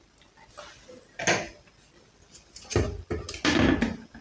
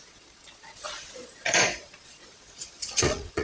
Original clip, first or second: first